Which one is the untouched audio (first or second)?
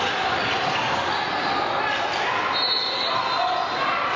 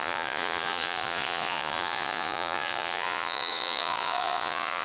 first